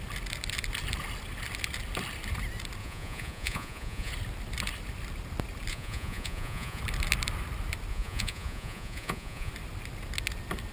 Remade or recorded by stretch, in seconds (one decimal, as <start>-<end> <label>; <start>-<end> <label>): 0.0-2.8 recorded; 2.8-4.1 remade; 4.1-5.7 recorded; 5.7-6.8 remade; 6.8-7.9 recorded; 7.9-9.5 remade; 9.5-10.7 recorded

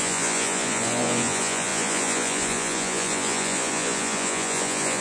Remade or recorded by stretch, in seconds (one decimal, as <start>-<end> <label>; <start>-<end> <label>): 0.0-5.0 remade